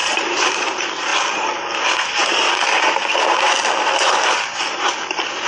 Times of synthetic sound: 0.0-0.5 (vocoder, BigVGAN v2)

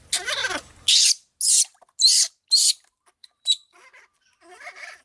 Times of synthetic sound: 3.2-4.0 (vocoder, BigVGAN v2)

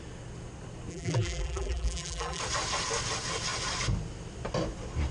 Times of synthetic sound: 0.9-2.4 (vocoder, BigVGAN v2)

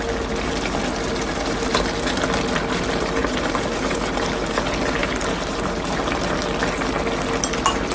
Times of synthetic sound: 3.2-4.3 (vocoder, BigVGAN v2); 5.0-6.1